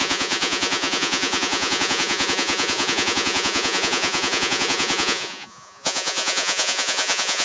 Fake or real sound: fake